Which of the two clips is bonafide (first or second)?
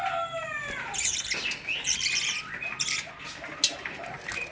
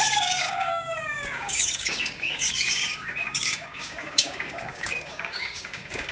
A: first